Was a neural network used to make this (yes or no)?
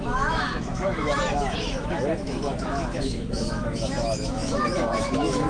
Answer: yes